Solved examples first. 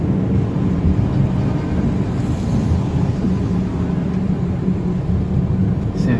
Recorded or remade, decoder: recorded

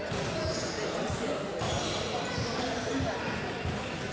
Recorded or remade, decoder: recorded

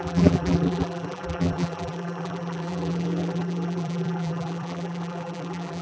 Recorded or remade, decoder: remade, vocoder, BigVGAN v2